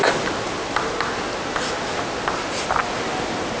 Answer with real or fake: real